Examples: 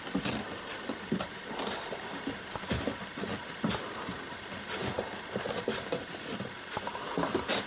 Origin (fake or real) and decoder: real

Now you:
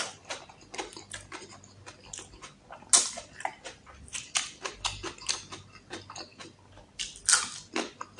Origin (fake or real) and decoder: real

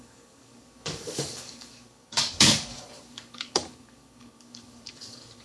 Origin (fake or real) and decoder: fake, codec, DAC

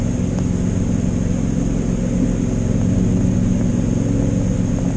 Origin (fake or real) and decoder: real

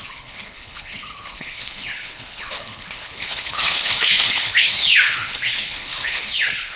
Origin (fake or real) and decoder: fake, codec, HILCodec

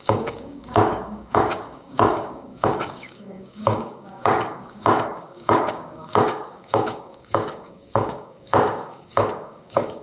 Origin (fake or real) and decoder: fake, codec, DAC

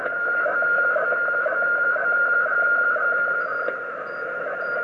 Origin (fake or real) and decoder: real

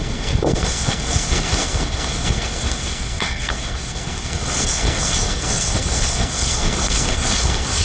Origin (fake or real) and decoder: fake, codec, SNAC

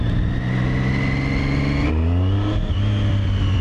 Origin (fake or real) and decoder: real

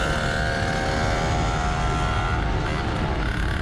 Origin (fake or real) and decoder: real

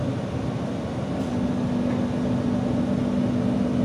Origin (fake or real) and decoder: real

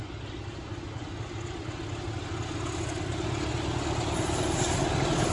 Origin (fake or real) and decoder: real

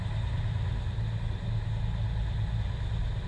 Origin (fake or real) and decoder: real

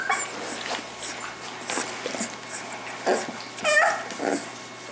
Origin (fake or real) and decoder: real